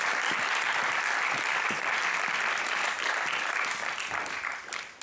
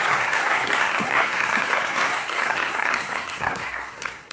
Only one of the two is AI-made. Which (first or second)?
second